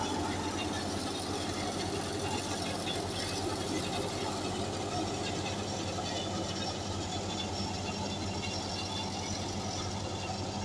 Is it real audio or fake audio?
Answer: real